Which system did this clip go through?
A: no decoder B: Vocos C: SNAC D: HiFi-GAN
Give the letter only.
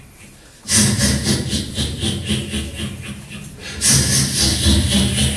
A